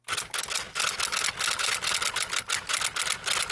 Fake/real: real